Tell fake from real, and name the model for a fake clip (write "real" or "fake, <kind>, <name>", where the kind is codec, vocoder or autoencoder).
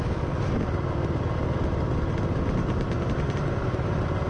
real